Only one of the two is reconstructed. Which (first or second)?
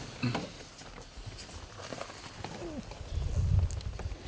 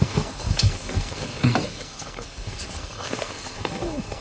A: second